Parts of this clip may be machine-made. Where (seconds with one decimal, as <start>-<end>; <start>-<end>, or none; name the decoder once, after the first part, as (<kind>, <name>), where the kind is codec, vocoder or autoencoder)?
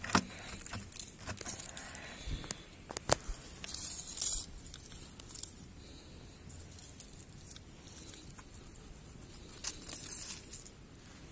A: none